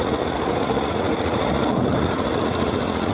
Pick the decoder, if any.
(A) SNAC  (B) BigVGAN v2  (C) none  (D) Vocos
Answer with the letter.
D